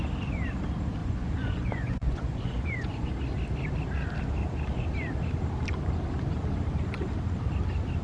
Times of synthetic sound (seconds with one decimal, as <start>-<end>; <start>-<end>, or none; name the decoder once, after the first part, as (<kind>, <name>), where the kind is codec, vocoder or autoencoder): 1.0-3.1 (vocoder, Vocos)